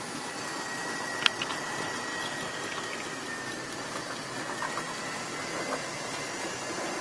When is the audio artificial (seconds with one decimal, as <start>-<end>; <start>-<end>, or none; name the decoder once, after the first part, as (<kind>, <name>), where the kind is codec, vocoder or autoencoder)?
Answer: 2.1-2.9 (vocoder, BigVGAN v2)